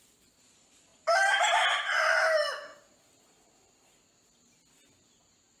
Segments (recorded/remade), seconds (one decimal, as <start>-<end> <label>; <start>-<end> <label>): 0.0-0.9 recorded; 0.9-1.5 remade; 1.5-5.6 recorded